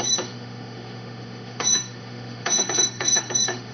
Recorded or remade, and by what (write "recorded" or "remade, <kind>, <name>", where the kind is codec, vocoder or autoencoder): remade, autoencoder, DAC-VAE